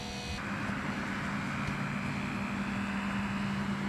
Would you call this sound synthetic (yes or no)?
no